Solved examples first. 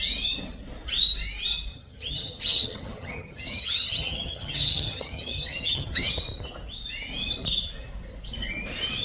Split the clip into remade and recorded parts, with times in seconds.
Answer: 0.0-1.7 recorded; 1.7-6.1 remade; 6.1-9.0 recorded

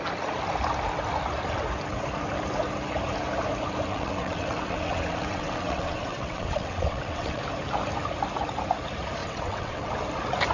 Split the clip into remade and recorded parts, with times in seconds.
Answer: 0.0-3.9 recorded; 3.9-7.4 remade; 7.4-9.2 recorded; 9.2-9.9 remade; 9.9-10.5 recorded

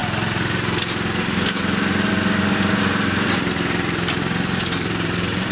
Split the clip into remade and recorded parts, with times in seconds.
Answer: 0.0-3.3 recorded; 3.3-5.5 remade

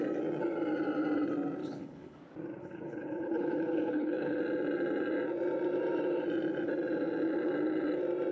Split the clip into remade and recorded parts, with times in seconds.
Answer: 0.0-1.6 recorded; 1.6-2.2 remade; 2.2-2.6 recorded; 2.6-4.4 remade; 4.4-8.3 recorded

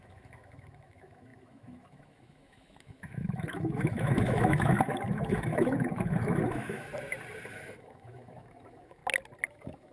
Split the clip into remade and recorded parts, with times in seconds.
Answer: 0.0-6.9 remade; 6.9-7.5 recorded; 7.5-9.0 remade; 9.0-9.5 recorded; 9.5-9.9 remade

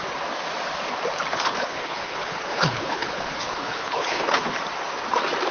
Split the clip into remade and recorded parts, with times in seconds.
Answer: 0.0-1.3 recorded; 1.3-4.6 remade; 4.6-5.5 recorded

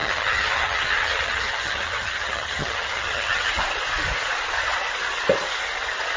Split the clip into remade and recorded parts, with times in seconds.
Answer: 0.0-3.5 remade; 3.5-6.2 recorded